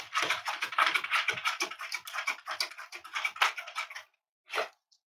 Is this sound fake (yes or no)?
no